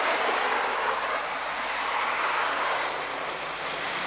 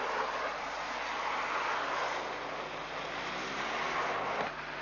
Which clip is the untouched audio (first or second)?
second